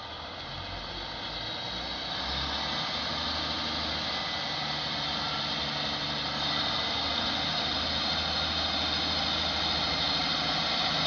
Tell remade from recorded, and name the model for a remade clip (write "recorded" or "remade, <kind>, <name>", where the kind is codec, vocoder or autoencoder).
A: recorded